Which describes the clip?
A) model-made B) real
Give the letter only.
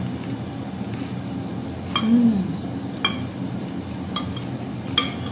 B